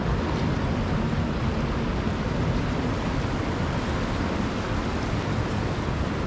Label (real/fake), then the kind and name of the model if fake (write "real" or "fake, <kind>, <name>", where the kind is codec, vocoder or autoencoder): real